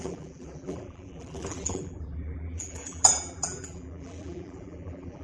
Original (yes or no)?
no